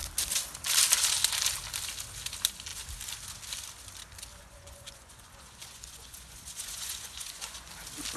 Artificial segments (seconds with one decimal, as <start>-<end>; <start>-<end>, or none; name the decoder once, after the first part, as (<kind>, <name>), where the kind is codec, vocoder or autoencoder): 4.3-7.7 (vocoder, Vocos)